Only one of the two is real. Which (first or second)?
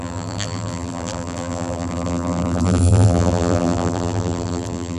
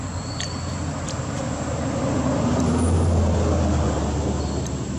second